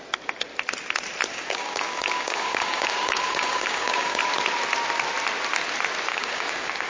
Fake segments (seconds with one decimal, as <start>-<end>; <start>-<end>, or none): 1.3-4.2; 6.1-6.9